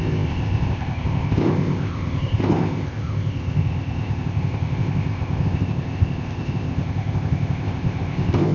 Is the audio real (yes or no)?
no